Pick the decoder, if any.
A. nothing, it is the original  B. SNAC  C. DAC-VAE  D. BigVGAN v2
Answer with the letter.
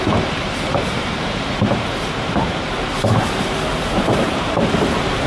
D